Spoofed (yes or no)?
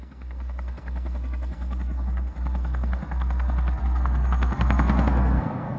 yes